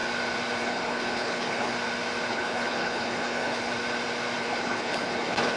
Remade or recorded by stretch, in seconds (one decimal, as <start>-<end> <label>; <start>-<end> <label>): 0.0-0.6 recorded; 0.6-1.7 remade; 1.7-2.3 recorded; 2.3-3.7 remade; 3.7-4.4 recorded; 4.4-5.6 remade